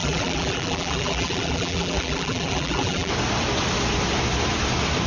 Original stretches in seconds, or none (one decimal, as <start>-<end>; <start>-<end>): 3.1-5.1